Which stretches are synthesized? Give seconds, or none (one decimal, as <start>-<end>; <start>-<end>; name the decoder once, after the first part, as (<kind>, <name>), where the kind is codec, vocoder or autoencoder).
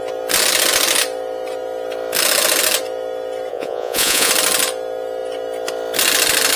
3.5-4.3 (vocoder, Vocos)